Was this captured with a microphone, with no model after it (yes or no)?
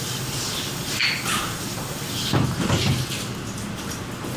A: yes